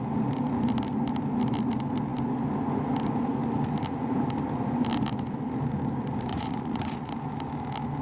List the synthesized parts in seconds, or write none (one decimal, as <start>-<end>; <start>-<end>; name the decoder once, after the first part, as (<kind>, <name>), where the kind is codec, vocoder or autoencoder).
6.3-7.1 (vocoder, Vocos)